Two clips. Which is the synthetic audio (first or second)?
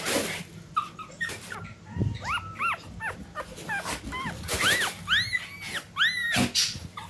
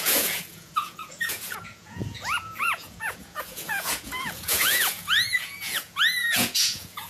second